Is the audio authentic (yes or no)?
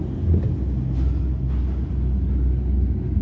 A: yes